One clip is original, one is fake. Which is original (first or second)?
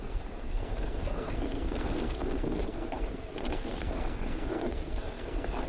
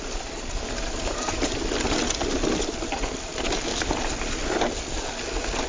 second